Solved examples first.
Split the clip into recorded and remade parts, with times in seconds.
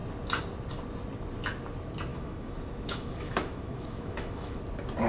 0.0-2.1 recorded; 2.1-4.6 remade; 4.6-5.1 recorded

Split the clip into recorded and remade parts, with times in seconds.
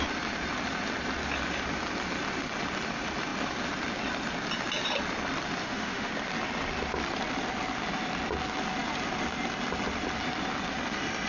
0.0-5.6 recorded; 5.6-6.1 remade; 6.1-11.3 recorded